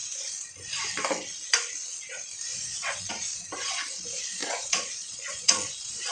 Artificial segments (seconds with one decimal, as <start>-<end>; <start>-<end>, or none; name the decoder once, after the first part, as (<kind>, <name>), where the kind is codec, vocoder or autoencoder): 2.5-3.1 (vocoder, Vocos); 4.4-6.1